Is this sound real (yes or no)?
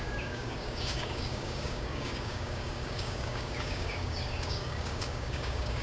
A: no